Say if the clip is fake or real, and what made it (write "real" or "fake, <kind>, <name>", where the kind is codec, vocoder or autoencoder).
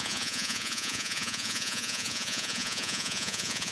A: fake, vocoder, Vocos